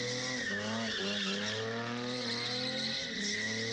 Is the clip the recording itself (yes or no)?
yes